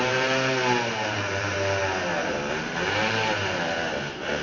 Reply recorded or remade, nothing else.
remade